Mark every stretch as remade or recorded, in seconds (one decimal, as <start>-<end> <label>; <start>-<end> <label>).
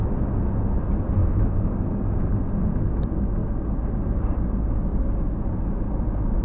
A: 0.0-4.9 recorded; 4.9-5.8 remade; 5.8-6.4 recorded